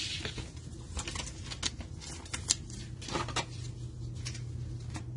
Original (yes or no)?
yes